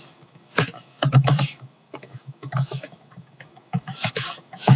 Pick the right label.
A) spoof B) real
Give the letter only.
A